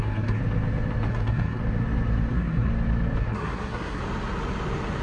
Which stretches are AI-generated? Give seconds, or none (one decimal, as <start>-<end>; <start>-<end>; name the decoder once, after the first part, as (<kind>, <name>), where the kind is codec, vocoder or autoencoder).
0.0-0.4 (codec, SNAC); 1.1-1.6; 2.3-2.7; 3.2-4.0